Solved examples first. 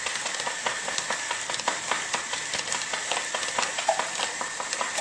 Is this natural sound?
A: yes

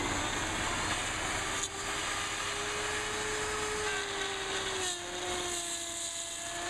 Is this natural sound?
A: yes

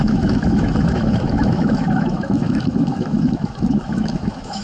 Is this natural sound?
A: no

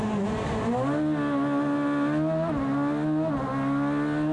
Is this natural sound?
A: yes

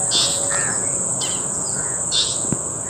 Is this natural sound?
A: no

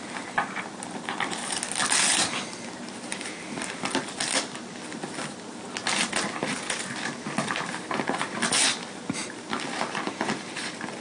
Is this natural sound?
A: yes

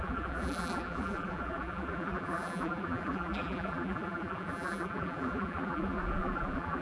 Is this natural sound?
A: no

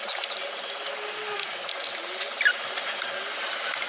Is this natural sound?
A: yes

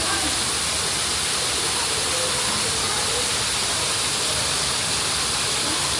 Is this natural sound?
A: yes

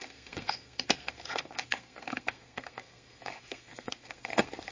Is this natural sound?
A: no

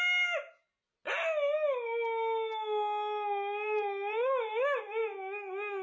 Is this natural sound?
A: yes